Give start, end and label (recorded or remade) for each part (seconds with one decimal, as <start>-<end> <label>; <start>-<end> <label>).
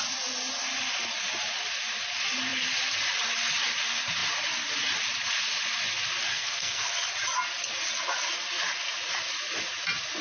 0.0-6.3 recorded; 6.3-6.9 remade; 6.9-10.2 recorded